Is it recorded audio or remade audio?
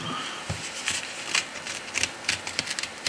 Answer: recorded